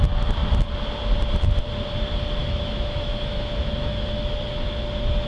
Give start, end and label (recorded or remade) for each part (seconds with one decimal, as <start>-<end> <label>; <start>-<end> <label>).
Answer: 0.0-2.4 recorded; 2.4-4.2 remade; 4.2-5.3 recorded